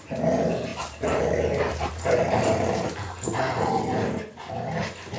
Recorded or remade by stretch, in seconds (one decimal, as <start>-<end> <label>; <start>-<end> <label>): 0.0-0.7 recorded; 0.7-3.8 remade; 3.8-5.2 recorded